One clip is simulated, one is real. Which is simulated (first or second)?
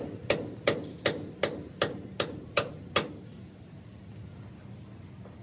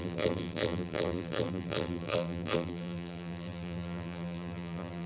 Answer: second